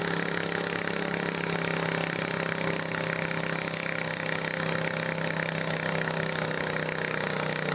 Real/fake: real